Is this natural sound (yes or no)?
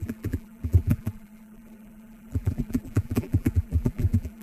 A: no